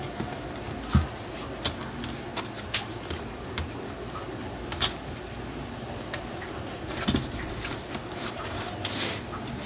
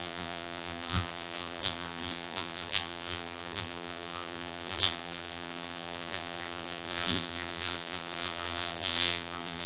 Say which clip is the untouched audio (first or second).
first